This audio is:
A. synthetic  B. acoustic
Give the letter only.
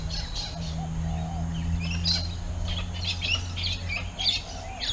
B